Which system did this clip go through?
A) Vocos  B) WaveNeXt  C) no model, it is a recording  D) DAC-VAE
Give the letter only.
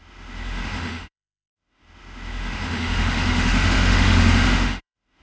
D